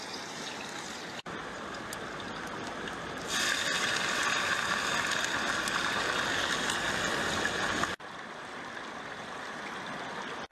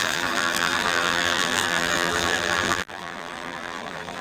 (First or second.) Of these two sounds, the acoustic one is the first